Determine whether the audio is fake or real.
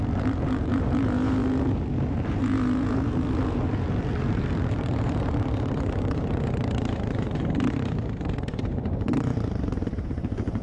fake